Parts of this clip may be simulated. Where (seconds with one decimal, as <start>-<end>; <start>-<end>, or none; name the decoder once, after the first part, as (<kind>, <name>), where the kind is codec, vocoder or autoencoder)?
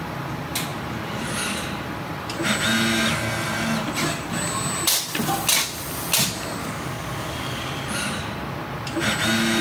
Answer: 6.6-7.6 (codec, DAC)